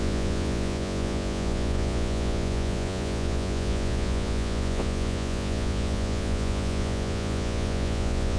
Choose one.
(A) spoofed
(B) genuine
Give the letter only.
A